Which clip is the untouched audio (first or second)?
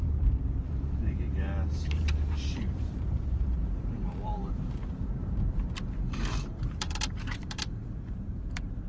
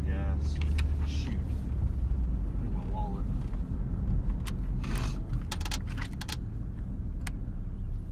second